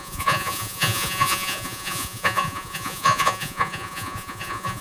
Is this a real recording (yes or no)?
no